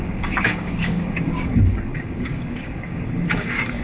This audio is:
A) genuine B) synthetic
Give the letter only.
B